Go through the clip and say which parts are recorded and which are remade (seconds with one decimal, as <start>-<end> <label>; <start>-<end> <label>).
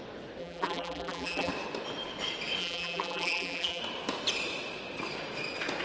0.0-0.4 recorded; 0.4-1.5 remade; 1.5-2.6 recorded; 2.6-3.8 remade; 3.8-5.8 recorded